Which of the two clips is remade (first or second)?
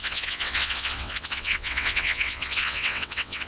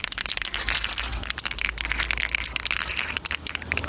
first